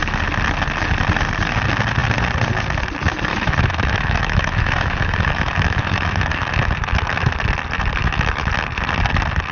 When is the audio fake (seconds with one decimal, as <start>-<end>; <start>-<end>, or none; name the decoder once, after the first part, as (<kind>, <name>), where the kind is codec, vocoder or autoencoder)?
3.3-7.3 (autoencoder, DAC-VAE); 8.0-8.5